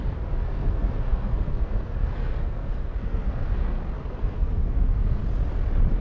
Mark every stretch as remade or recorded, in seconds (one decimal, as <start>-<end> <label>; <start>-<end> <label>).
0.0-5.2 remade; 5.2-6.0 recorded